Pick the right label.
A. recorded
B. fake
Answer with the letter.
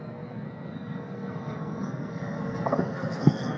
B